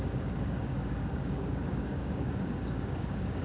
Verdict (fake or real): fake